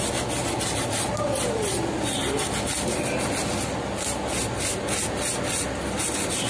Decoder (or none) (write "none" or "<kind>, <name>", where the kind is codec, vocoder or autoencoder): none